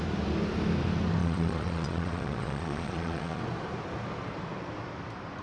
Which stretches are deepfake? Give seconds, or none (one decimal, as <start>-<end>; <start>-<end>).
1.2-3.4

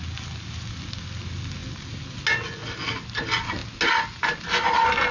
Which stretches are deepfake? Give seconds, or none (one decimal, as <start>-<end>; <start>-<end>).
none

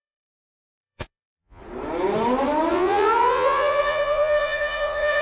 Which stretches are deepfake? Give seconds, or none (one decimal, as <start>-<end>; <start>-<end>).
0.0-1.6; 2.7-5.2

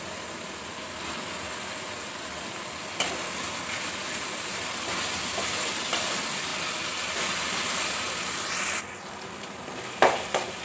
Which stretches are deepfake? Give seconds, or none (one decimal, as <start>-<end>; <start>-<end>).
none

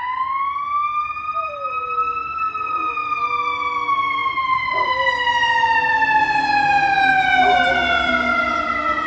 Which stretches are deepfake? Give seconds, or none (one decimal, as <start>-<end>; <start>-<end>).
none

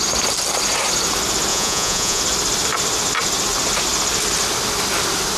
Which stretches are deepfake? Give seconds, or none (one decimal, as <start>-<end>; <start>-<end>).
1.5-2.2

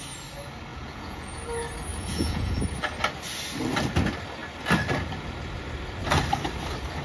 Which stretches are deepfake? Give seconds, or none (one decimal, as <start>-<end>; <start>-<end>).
0.7-1.5; 1.9-2.6

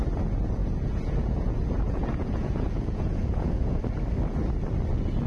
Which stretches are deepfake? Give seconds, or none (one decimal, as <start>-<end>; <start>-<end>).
0.6-3.8